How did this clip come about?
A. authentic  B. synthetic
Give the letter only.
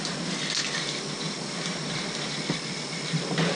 A